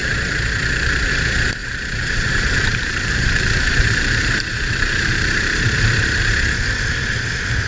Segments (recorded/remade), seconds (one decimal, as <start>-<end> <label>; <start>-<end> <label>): 0.0-1.1 remade; 1.1-1.6 recorded; 1.6-6.2 remade; 6.2-7.7 recorded